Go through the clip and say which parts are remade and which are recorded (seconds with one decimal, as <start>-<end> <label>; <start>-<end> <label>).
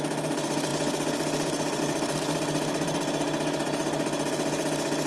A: 0.0-5.1 recorded